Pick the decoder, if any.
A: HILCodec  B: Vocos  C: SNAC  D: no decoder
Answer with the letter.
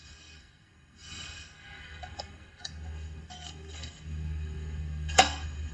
C